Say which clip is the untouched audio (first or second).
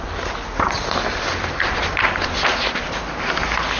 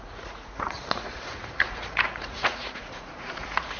first